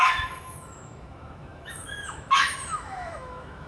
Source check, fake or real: fake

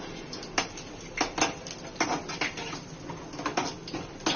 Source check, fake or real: real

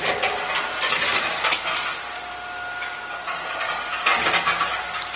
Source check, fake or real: real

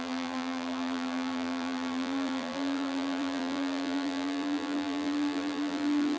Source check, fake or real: fake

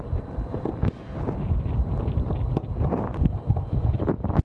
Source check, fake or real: real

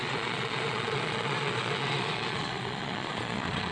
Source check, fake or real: fake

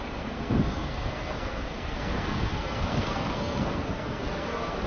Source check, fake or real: fake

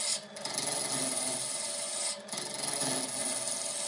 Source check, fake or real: real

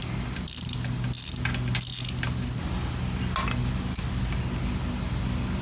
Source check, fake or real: real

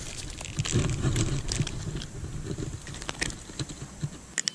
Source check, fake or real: real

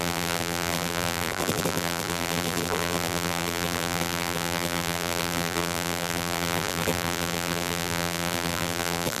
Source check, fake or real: fake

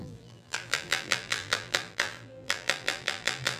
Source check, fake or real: fake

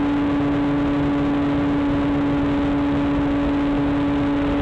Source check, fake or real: real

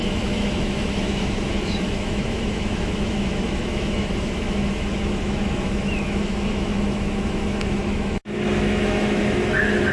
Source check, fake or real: fake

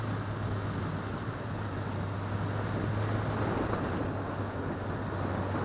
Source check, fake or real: real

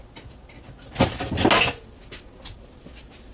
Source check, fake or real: real